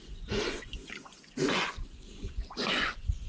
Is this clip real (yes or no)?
no